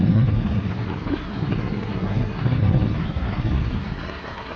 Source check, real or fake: fake